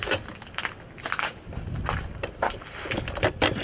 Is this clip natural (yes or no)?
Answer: yes